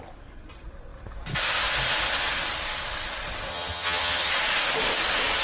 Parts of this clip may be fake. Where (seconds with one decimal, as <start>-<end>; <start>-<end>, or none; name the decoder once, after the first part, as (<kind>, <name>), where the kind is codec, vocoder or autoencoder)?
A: 3.5-4.3 (vocoder, HiFi-GAN)